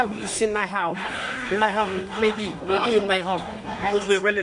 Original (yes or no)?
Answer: no